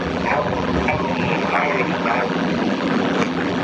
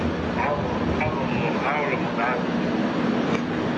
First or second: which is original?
second